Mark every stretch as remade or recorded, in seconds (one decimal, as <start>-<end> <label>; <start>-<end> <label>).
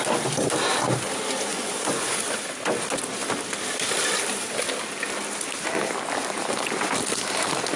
0.0-1.5 recorded; 1.5-2.4 remade; 2.4-7.8 recorded